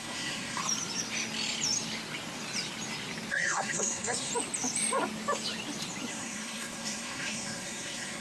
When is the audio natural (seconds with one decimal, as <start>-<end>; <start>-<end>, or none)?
0.6-3.3; 4.3-6.1